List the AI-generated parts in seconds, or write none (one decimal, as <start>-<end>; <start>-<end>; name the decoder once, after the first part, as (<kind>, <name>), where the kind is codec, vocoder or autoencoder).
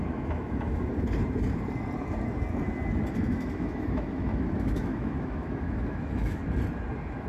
0.0-0.9 (autoencoder, DAC-VAE); 3.1-6.4